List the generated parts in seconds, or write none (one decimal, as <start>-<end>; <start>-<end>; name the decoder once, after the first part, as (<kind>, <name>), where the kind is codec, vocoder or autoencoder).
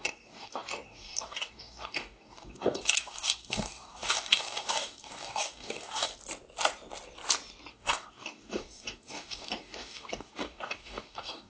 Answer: 0.0-6.1 (codec, DAC); 7.7-11.5